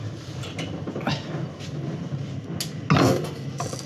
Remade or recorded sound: recorded